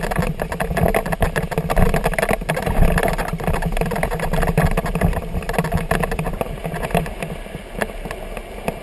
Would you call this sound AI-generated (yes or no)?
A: no